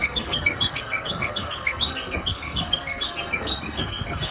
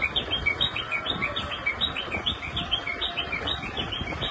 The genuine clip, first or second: second